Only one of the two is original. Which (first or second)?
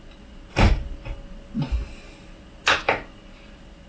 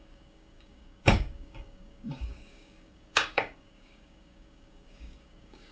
first